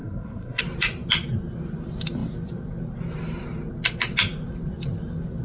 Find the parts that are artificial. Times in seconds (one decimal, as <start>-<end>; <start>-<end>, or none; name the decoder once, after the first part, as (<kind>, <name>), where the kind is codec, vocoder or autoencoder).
0.0-0.6 (codec, SNAC)